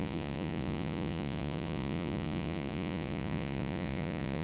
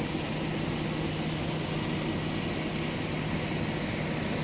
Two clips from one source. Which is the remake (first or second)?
first